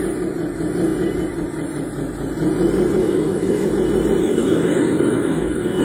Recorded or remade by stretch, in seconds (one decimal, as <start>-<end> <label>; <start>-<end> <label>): 0.0-3.0 recorded; 3.0-3.7 remade; 3.7-4.2 recorded; 4.2-5.8 remade